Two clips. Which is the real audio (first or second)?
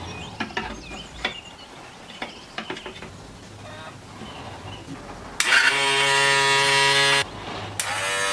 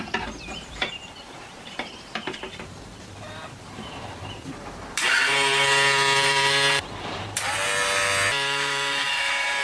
first